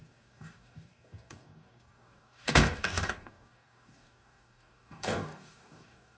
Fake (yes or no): yes